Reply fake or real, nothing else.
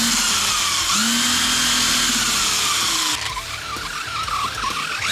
real